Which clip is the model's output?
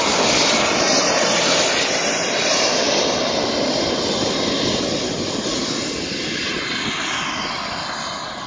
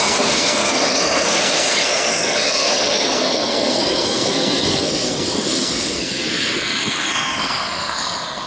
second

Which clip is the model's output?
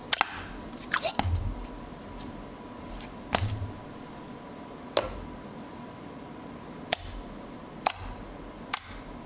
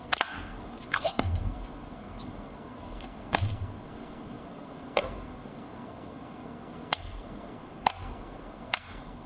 second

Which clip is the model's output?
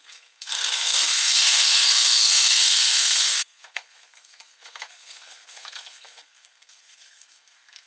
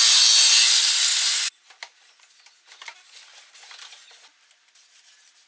first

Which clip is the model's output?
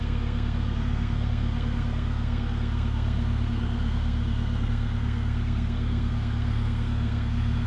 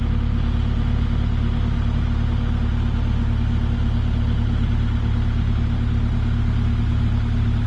first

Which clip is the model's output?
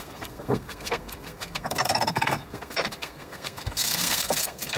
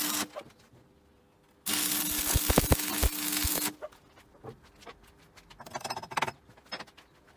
first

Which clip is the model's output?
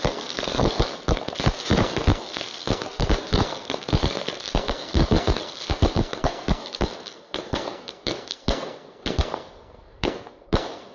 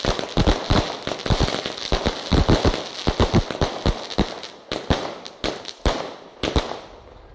first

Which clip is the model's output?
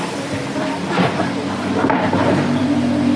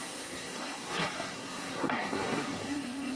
second